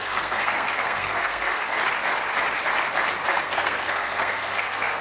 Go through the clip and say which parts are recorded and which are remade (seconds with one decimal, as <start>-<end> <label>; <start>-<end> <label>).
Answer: 0.0-1.8 remade; 1.8-3.4 recorded; 3.4-5.0 remade